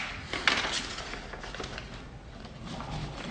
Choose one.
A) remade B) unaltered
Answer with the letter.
B